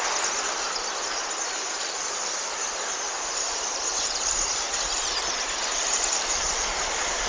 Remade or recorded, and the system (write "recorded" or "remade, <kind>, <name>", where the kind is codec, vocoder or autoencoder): remade, vocoder, BigVGAN v2